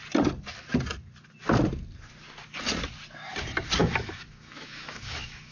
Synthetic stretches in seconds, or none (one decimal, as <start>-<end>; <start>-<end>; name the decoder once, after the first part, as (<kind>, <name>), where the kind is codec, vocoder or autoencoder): 3.8-5.5 (autoencoder, DAC-VAE)